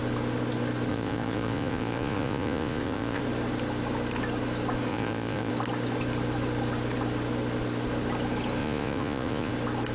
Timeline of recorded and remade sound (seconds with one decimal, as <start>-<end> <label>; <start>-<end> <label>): 0.0-0.9 recorded; 0.9-3.2 remade; 3.2-4.9 recorded; 4.9-5.5 remade; 5.5-8.6 recorded; 8.6-9.5 remade; 9.5-9.9 recorded